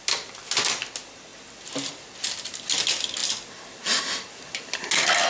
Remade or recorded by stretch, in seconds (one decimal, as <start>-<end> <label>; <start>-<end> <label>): 0.0-5.3 recorded